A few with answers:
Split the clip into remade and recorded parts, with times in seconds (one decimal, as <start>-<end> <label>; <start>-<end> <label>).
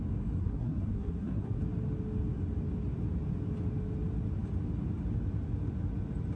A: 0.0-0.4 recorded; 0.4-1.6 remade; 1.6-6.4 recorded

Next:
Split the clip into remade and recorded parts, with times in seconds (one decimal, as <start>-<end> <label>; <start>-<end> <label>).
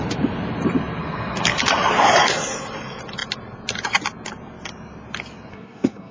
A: 0.0-5.5 recorded; 5.5-6.1 remade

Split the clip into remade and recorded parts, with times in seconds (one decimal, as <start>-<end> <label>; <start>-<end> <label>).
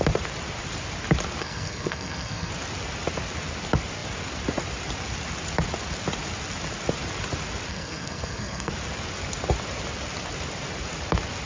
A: 0.0-1.4 recorded; 1.4-2.5 remade; 2.5-7.7 recorded; 7.7-8.7 remade; 8.7-11.5 recorded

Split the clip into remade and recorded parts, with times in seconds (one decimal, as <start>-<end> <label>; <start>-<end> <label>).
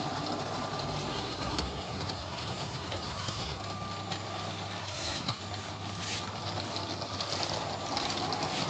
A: 0.0-1.1 recorded; 1.1-3.6 remade; 3.6-4.8 recorded; 4.8-5.4 remade; 5.4-8.7 recorded